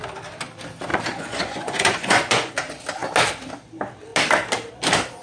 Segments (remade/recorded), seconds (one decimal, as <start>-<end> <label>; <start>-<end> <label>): 0.0-0.9 recorded; 0.9-2.5 remade; 2.5-5.2 recorded